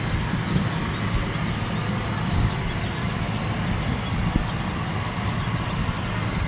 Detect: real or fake real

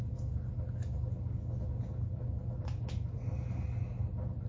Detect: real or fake real